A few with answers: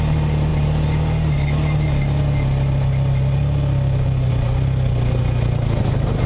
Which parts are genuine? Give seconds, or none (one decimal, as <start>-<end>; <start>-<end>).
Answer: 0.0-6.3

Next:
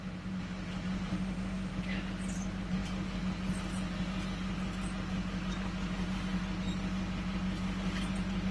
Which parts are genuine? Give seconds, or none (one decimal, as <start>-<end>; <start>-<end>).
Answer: 0.0-1.1; 1.7-8.5

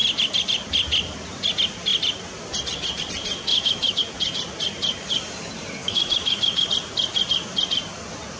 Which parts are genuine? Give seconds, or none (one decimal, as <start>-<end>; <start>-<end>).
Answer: 0.0-3.5; 4.0-5.8; 6.7-8.4

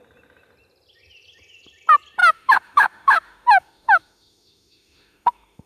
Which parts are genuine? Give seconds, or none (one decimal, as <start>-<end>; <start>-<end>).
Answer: 0.0-2.2

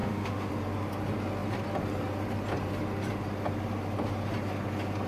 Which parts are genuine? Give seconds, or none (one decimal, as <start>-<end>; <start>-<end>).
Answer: 0.5-5.1

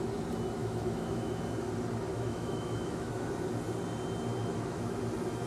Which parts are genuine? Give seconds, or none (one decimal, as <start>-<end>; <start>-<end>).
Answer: 0.0-0.6; 1.4-2.1; 3.3-4.4; 5.0-5.5

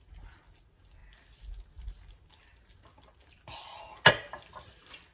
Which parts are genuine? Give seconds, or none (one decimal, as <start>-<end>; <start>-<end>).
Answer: 0.0-5.1

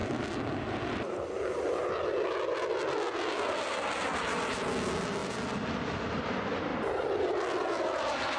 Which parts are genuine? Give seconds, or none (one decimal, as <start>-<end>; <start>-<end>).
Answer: 0.0-8.4